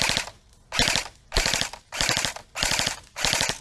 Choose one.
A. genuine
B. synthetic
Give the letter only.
A